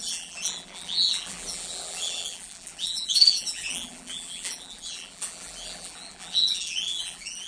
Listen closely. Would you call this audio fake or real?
fake